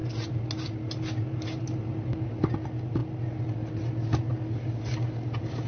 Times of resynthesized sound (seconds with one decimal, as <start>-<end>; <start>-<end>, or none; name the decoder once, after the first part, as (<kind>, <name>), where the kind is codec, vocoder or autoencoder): none